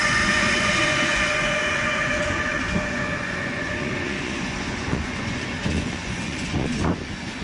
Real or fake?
fake